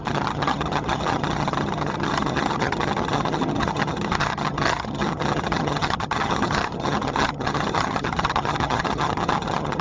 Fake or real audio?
fake